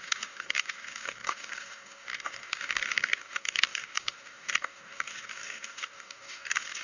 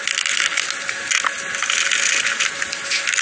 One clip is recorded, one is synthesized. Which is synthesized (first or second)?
first